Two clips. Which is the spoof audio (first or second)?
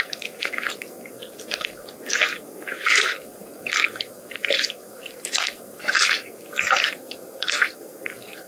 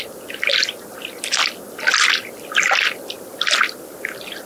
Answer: first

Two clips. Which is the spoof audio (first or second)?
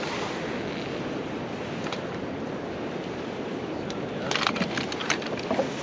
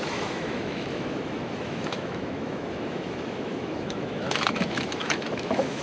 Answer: second